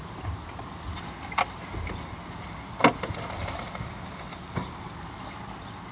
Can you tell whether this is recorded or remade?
recorded